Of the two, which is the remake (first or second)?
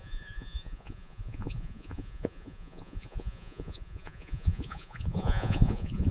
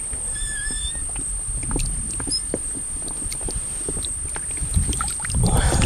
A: first